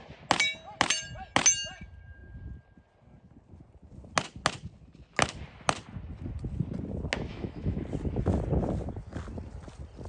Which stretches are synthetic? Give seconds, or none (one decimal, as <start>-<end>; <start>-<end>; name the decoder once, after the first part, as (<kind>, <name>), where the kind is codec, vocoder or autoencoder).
7.3-7.8 (autoencoder, DAC-VAE)